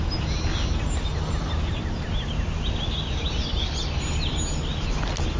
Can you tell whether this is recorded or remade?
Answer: recorded